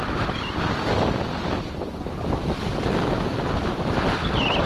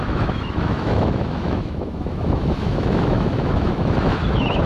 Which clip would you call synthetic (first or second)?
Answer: second